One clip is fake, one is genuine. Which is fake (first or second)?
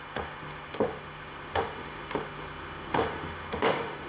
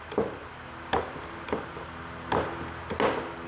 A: first